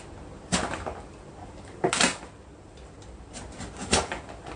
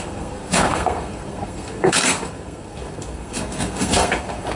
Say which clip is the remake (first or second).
second